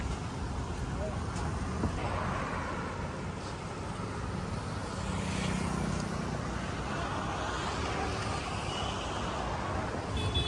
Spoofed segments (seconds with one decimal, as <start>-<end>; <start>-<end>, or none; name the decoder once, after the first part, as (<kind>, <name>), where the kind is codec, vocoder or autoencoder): none